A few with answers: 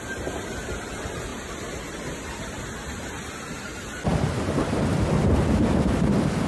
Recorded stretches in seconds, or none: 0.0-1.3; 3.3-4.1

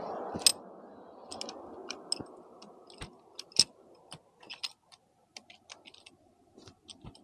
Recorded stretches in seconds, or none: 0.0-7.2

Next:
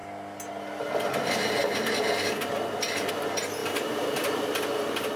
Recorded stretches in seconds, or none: 0.0-3.6; 4.4-5.2

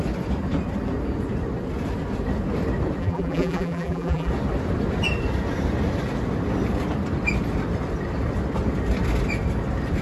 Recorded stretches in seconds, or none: 0.0-3.0; 4.3-10.0